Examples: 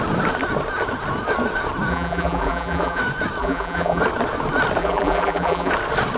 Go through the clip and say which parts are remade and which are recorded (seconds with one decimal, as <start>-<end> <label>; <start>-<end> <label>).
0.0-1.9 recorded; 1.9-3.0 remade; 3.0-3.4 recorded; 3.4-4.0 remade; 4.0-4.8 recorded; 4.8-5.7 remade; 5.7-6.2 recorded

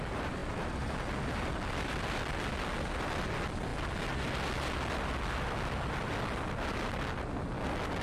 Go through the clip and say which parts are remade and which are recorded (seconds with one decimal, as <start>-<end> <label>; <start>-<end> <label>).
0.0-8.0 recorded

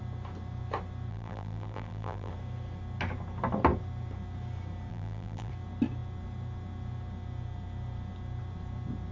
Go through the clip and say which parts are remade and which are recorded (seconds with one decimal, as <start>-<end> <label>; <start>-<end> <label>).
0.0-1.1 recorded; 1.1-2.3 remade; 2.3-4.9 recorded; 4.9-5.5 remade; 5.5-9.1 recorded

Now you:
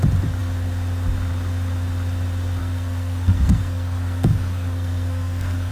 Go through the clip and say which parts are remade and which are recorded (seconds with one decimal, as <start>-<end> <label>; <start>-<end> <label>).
0.0-2.6 recorded; 2.6-5.7 remade